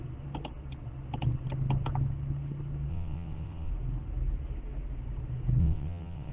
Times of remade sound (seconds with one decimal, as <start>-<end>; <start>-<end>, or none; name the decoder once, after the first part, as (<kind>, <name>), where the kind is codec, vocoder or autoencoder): 2.9-3.7 (vocoder, WaveNeXt); 5.6-6.3